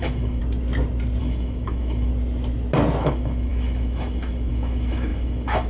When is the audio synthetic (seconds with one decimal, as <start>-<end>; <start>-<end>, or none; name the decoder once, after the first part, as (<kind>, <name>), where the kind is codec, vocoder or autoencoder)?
0.0-0.4 (autoencoder, DAC-VAE); 1.2-2.1; 3.0-5.7